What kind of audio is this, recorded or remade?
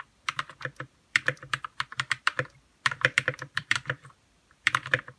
remade